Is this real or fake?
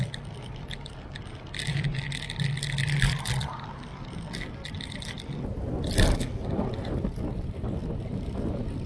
real